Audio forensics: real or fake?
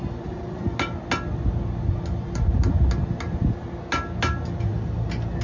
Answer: real